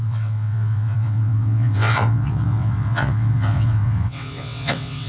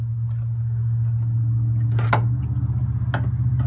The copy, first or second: first